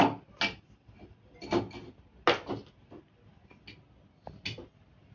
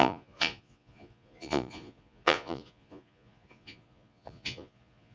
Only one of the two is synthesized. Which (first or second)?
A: second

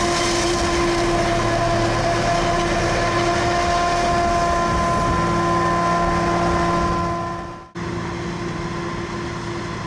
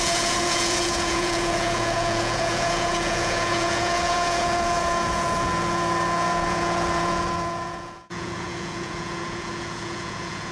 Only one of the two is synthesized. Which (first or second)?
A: second